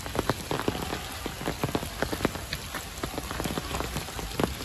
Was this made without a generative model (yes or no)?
yes